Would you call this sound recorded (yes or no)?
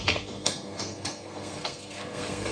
no